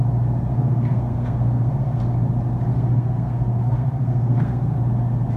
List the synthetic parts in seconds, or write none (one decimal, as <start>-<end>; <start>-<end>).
0.5-2.0; 2.7-4.8